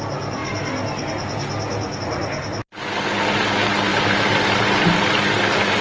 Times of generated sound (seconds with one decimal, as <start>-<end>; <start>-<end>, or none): none